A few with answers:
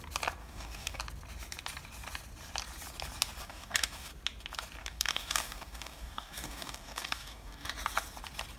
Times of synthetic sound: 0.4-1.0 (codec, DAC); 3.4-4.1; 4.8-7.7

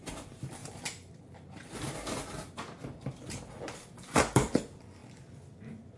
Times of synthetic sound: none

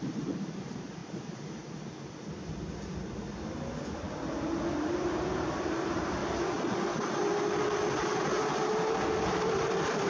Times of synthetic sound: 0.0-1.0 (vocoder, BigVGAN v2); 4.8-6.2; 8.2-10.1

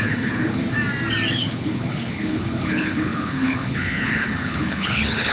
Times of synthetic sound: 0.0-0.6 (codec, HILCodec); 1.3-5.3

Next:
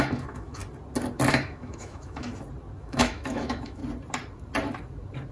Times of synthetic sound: 0.0-0.6 (autoencoder, DAC-VAE); 1.3-2.3; 2.8-3.8